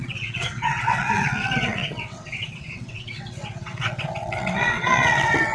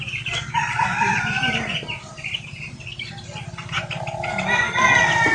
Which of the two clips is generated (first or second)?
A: first